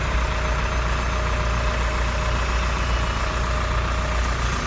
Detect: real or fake real